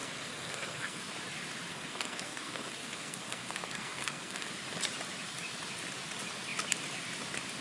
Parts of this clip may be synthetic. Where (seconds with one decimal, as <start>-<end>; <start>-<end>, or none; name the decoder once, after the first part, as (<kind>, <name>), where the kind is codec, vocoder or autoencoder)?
0.0-1.0 (codec, SNAC); 1.7-4.5